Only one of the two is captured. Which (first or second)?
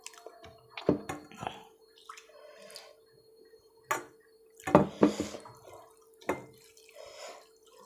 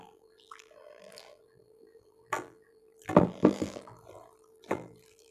first